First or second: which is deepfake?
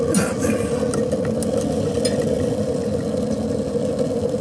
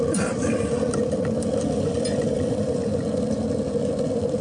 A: second